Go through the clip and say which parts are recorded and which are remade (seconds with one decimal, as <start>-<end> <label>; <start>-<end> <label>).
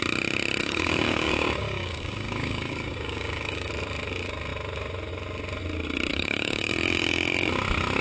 0.0-0.6 recorded; 0.6-3.7 remade; 3.7-6.1 recorded; 6.1-6.7 remade; 6.7-8.0 recorded